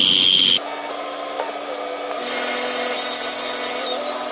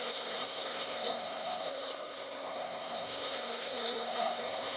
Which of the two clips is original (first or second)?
first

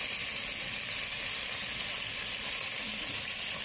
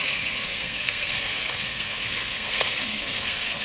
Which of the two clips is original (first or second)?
first